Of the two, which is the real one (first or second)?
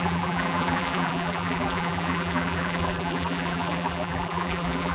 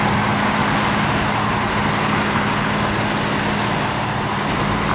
second